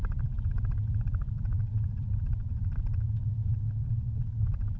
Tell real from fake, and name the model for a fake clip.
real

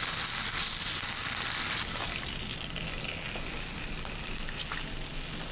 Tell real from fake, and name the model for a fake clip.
real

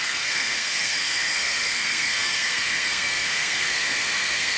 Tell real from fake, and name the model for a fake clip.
fake, codec, SNAC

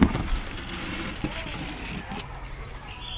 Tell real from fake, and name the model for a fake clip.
real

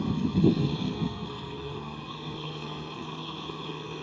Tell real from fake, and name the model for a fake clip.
fake, codec, SNAC